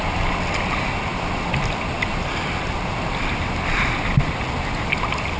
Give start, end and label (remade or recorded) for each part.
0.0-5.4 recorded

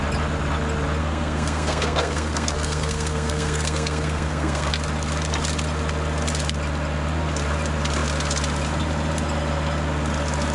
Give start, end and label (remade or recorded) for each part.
0.0-1.0 recorded; 1.0-4.7 remade; 4.7-10.5 recorded